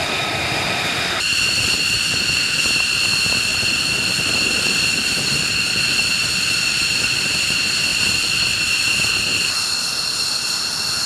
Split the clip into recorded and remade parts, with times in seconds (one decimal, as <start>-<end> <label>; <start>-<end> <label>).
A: 0.0-3.5 recorded; 3.5-5.2 remade; 5.2-7.9 recorded; 7.9-8.4 remade; 8.4-11.1 recorded